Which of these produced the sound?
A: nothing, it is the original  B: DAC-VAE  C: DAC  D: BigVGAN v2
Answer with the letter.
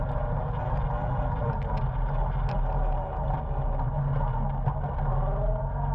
A